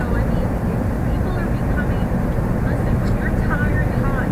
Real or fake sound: real